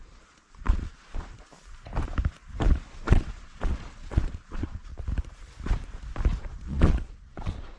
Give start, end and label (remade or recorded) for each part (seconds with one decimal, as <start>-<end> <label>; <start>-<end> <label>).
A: 0.0-1.5 remade; 1.5-2.7 recorded; 2.7-4.9 remade; 4.9-6.4 recorded; 6.4-7.8 remade